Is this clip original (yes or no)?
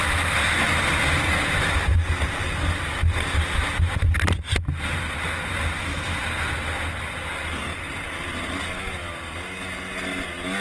yes